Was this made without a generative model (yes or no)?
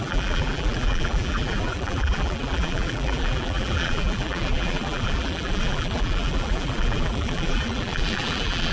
no